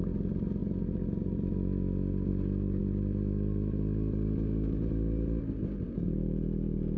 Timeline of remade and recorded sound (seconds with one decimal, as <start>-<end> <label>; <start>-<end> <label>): 0.0-7.0 recorded